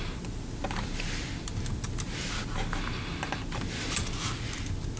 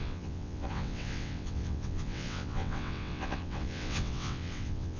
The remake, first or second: second